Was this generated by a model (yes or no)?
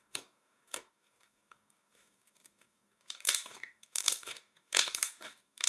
yes